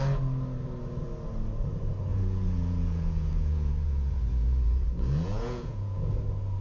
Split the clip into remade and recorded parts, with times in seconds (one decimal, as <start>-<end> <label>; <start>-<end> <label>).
0.0-2.1 recorded; 2.1-6.1 remade; 6.1-6.6 recorded

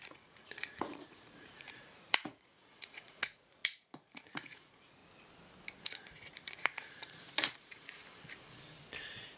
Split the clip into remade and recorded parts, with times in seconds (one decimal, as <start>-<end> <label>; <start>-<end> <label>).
0.0-5.0 remade; 5.0-5.8 recorded; 5.8-8.0 remade; 8.0-9.0 recorded; 9.0-9.4 remade

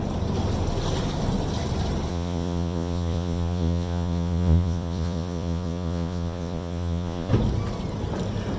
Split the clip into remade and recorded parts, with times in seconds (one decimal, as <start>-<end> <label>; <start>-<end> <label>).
0.0-2.1 recorded; 2.1-7.3 remade; 7.3-8.6 recorded

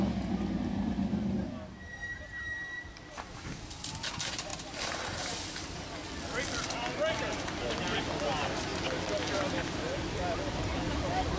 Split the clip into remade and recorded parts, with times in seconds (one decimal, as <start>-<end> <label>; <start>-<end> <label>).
0.0-11.4 recorded

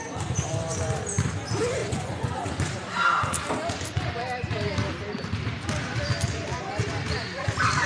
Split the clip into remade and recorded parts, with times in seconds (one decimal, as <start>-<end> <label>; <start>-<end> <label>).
0.0-1.8 recorded; 1.8-2.5 remade; 2.5-7.9 recorded

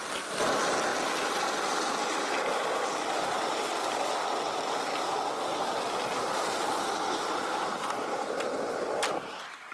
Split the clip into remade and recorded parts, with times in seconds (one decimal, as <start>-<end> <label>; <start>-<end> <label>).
0.0-9.7 recorded

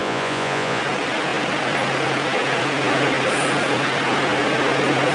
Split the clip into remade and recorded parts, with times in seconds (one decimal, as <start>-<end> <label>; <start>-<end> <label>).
0.0-0.8 remade; 0.8-5.1 recorded